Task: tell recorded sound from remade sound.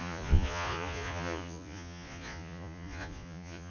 remade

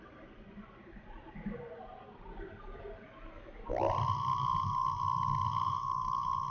recorded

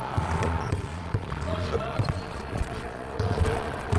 remade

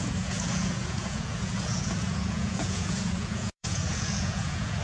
remade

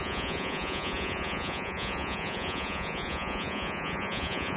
remade